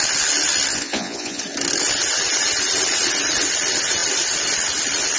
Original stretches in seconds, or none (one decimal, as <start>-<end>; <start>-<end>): 0.0-0.7; 1.4-5.2